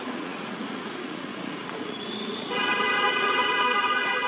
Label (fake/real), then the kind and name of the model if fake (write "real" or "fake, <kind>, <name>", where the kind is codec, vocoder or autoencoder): fake, vocoder, Vocos